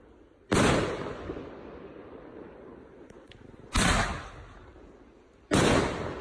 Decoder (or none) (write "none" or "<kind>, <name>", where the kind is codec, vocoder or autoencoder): none